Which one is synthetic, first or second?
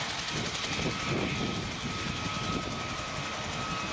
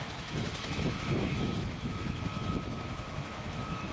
second